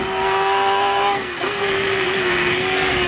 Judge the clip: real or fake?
fake